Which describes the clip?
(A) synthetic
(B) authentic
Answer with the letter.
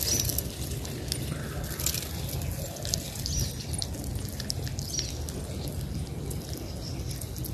B